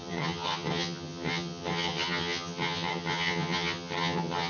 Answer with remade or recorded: remade